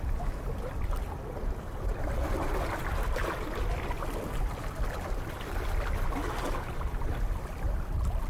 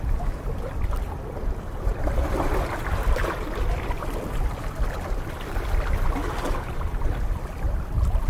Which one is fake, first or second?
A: second